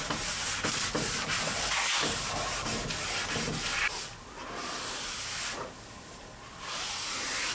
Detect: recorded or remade recorded